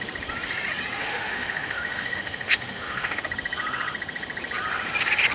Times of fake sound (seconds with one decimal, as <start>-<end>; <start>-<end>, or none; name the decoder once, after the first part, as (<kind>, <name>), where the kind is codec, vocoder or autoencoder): 1.0-3.2 (autoencoder, DAC-VAE)